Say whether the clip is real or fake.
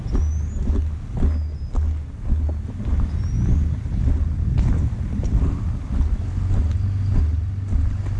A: real